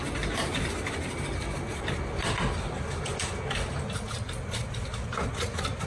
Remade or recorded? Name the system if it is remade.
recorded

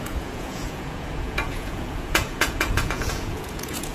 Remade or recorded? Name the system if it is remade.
remade, vocoder, Vocos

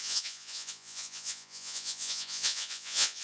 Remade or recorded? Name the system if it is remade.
remade, vocoder, Vocos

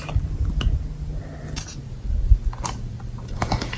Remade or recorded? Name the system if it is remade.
recorded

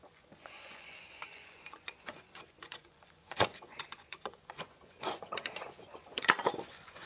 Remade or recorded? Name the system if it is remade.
remade, vocoder, Vocos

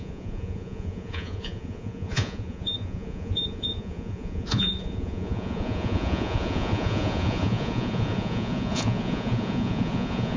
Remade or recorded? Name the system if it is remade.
remade, vocoder, Vocos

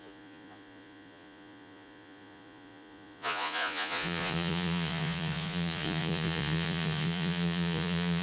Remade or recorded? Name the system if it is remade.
remade, vocoder, Vocos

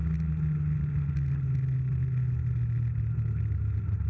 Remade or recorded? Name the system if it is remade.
recorded